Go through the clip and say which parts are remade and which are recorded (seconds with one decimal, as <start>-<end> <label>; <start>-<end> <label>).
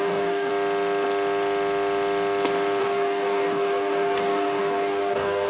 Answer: 0.0-0.5 remade; 0.5-2.8 recorded; 2.8-5.5 remade